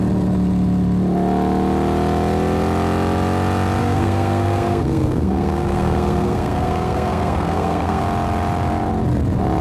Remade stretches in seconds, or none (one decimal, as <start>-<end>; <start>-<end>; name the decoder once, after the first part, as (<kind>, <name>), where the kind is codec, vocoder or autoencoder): 3.8-8.0 (codec, SNAC)